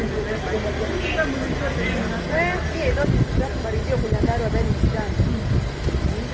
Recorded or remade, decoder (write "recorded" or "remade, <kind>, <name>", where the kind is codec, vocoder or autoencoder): recorded